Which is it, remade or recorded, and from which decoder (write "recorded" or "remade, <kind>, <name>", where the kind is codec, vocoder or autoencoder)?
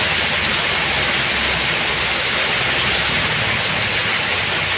recorded